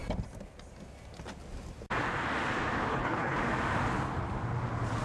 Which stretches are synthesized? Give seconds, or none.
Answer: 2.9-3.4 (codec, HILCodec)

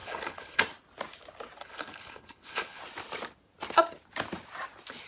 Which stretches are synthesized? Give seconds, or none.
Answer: 0.0-0.6 (codec, HILCodec); 1.6-2.8